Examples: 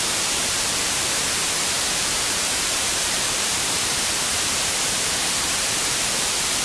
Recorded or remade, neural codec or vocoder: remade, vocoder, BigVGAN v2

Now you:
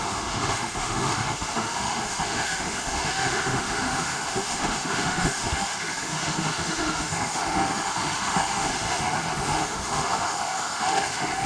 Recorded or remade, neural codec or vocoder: remade, autoencoder, DAC-VAE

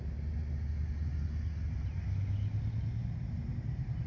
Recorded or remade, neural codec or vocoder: recorded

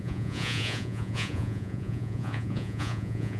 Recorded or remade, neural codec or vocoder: remade, vocoder, Vocos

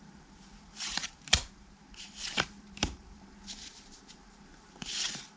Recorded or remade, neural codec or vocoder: remade, vocoder, BigVGAN v2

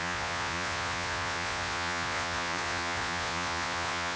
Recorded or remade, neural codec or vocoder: remade, vocoder, Vocos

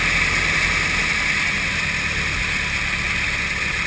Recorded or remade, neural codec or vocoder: recorded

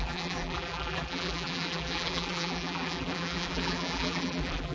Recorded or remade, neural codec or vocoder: remade, vocoder, BigVGAN v2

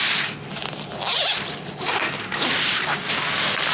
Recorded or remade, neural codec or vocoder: recorded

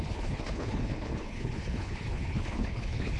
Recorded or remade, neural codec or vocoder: remade, codec, HILCodec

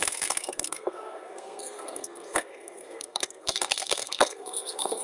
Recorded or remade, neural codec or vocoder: remade, codec, SNAC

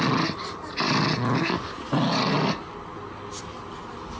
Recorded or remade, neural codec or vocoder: recorded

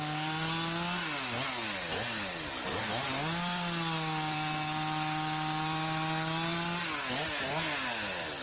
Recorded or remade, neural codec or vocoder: recorded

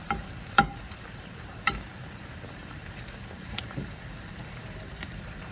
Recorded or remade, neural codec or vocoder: remade, vocoder, BigVGAN v2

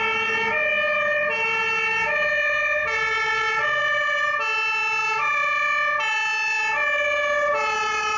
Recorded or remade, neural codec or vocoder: recorded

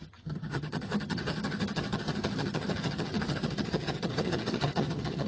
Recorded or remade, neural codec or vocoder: remade, vocoder, HiFi-GAN